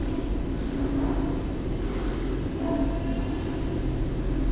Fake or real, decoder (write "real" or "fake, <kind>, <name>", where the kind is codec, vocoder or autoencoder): real